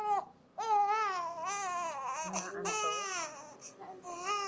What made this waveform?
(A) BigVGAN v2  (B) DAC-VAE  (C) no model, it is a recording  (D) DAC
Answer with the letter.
C